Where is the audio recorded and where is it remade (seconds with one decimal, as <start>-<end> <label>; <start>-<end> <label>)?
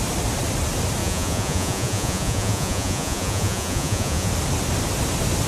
0.0-1.0 recorded; 1.0-4.3 remade; 4.3-5.5 recorded